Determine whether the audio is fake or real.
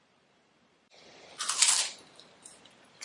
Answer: fake